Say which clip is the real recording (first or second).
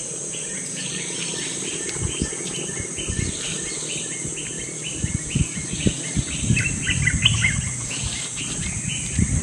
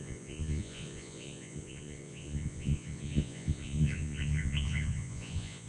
first